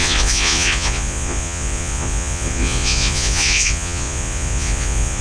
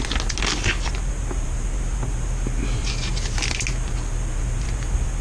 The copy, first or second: first